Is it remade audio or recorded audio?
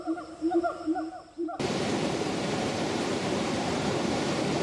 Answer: remade